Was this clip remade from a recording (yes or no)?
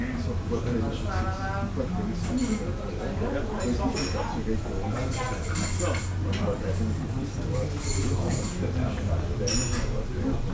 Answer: no